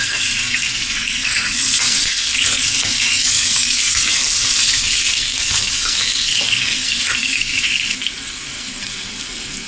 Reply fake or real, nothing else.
fake